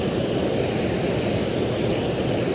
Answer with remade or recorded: recorded